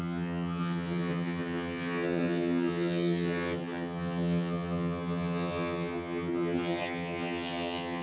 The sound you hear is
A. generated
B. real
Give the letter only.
A